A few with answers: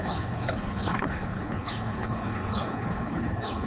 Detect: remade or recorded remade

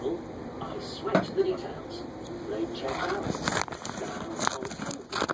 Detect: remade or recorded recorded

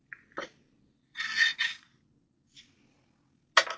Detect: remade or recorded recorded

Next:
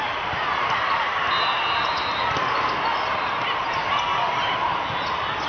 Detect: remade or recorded recorded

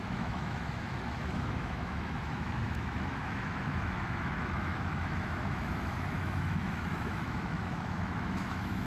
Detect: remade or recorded remade